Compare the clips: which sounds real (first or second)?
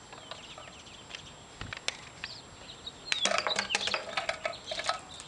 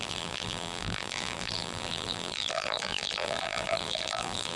first